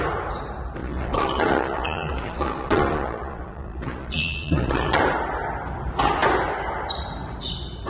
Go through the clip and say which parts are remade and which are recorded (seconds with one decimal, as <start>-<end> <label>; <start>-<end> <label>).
0.0-0.8 recorded; 0.8-5.0 remade; 5.0-7.9 recorded